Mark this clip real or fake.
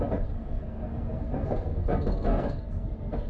fake